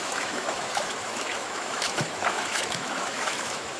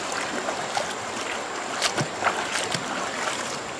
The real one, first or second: second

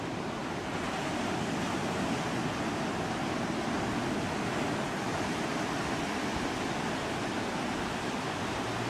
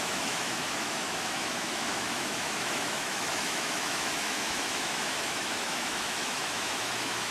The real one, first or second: first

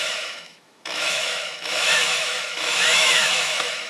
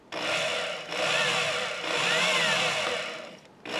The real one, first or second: second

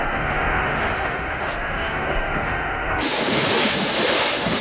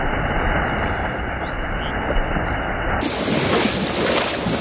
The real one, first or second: second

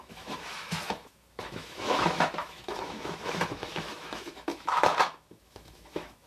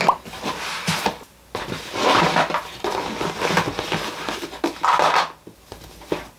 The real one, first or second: second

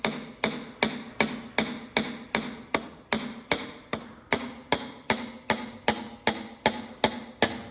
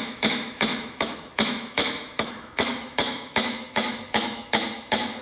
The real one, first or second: first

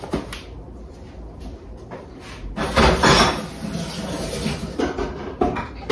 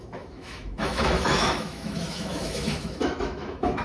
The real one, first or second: first